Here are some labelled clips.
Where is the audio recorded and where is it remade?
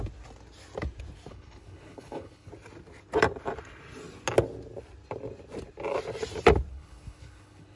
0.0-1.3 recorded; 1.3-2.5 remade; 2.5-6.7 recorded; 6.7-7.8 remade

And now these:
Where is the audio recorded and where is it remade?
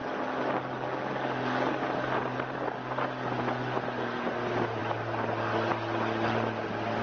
0.0-7.0 recorded